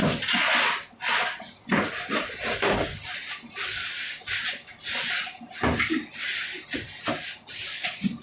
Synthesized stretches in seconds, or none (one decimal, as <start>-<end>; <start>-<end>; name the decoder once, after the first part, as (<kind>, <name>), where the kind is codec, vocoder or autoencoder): none